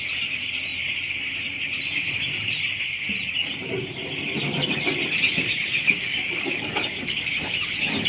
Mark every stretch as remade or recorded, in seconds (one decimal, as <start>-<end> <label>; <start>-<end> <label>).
0.0-6.0 recorded; 6.0-7.6 remade; 7.6-8.1 recorded